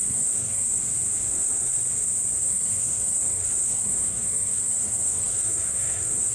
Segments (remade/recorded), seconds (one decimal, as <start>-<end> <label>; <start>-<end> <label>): 0.0-0.8 remade; 0.8-1.3 recorded; 1.3-1.8 remade; 1.8-2.5 recorded; 2.5-6.3 remade